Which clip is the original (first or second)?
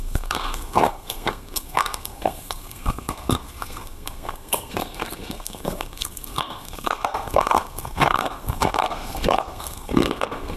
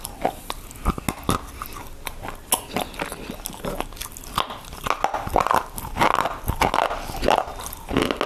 second